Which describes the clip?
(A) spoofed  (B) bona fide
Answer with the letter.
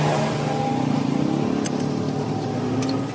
B